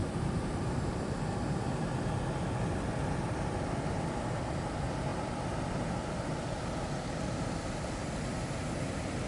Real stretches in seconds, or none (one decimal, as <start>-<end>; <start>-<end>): 0.7-9.3